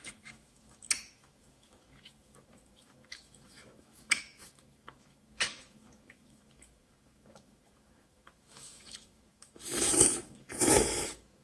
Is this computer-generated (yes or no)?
yes